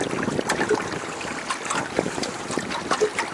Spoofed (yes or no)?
no